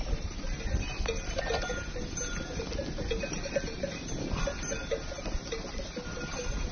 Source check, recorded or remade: recorded